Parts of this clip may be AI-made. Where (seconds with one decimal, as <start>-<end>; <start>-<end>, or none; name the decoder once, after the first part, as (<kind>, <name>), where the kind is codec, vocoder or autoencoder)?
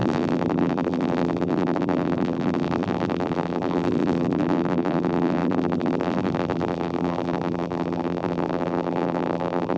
0.0-9.8 (vocoder, BigVGAN v2)